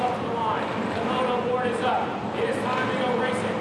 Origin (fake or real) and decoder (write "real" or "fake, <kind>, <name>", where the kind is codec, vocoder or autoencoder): real